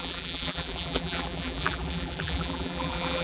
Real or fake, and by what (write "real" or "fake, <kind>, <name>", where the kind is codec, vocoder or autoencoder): fake, vocoder, BigVGAN v2